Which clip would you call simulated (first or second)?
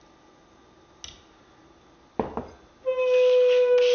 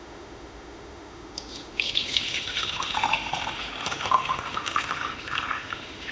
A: second